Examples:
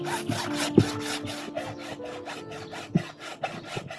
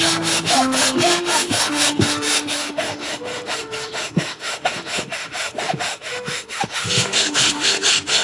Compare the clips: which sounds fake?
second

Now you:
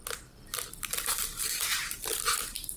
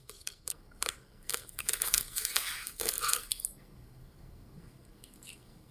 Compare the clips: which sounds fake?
second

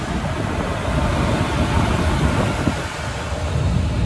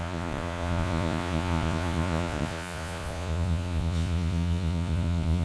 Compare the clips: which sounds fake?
second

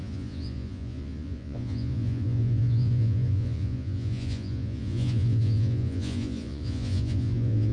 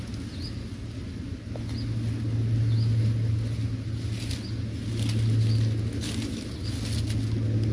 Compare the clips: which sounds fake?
first